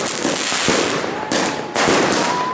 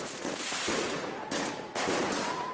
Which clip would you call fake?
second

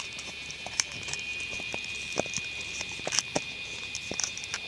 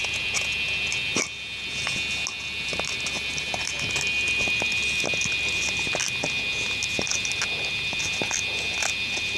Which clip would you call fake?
first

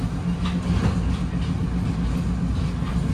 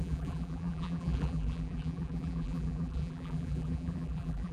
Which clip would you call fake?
second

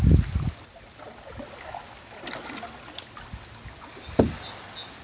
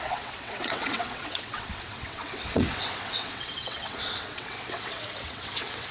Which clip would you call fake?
second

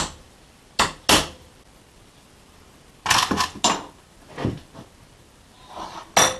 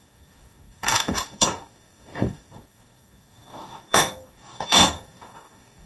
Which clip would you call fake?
second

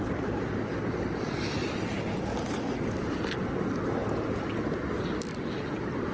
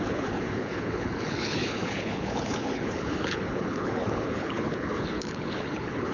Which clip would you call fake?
second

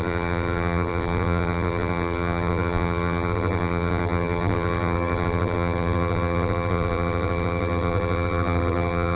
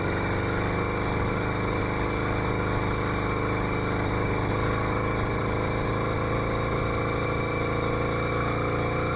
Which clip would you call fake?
first